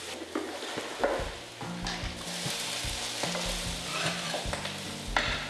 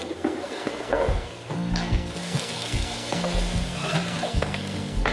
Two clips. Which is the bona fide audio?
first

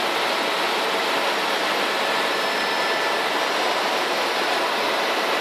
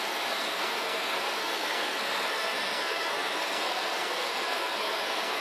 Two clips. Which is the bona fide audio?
first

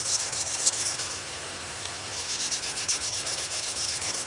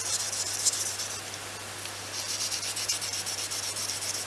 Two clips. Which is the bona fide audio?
second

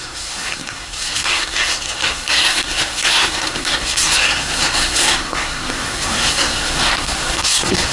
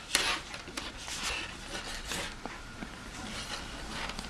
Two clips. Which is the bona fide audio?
second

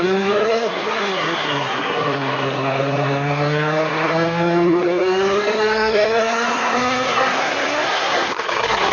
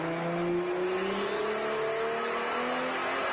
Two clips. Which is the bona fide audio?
second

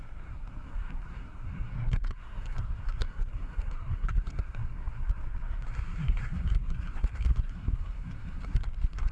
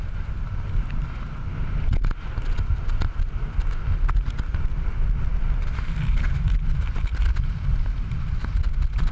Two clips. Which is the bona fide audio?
second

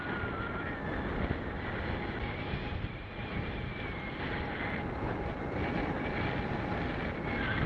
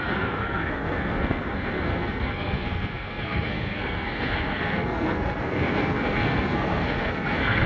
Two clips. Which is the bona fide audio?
first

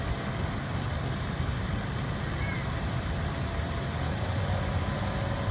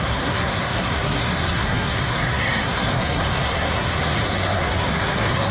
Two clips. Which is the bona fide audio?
first